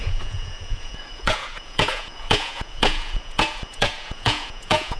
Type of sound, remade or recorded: remade